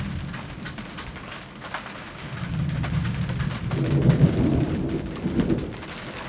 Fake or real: real